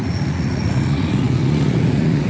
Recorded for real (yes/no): no